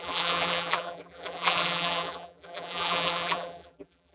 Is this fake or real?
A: fake